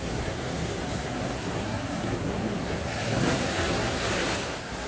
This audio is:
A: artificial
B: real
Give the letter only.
A